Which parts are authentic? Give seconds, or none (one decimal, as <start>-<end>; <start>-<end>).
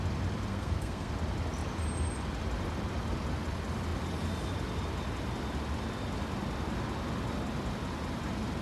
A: 0.0-0.5; 1.1-8.6